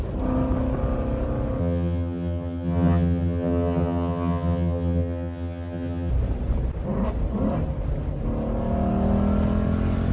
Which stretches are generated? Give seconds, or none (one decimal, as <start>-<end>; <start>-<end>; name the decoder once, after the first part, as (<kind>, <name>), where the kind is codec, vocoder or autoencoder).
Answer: 1.6-6.1 (vocoder, HiFi-GAN)